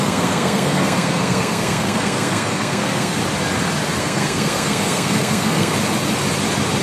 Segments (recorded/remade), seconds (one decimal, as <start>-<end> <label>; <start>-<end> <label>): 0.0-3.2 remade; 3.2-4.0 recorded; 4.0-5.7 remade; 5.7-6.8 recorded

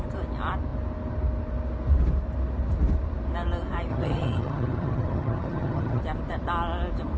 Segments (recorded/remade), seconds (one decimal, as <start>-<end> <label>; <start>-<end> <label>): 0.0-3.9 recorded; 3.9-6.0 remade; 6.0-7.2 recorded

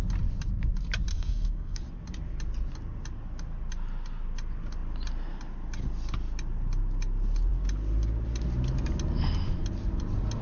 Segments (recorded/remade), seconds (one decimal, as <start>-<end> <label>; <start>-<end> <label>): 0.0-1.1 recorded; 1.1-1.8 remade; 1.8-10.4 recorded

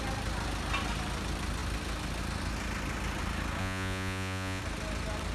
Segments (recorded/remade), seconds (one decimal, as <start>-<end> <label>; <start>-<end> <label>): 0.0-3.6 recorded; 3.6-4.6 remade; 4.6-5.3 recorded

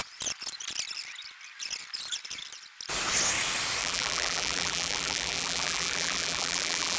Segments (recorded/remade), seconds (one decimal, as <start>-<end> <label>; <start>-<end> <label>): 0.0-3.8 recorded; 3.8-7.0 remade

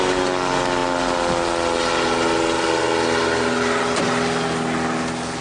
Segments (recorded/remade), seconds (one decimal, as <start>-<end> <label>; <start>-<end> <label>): 0.0-5.4 recorded